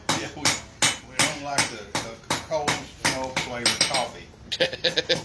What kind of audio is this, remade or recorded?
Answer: recorded